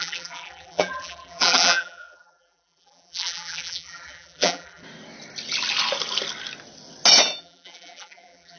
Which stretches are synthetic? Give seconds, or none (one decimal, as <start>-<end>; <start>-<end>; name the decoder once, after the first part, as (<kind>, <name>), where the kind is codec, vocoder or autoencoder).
0.0-4.8 (vocoder, BigVGAN v2); 7.4-8.6